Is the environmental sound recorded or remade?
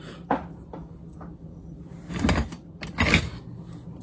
recorded